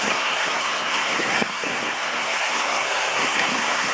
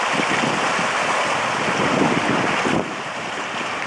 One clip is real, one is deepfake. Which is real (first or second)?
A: second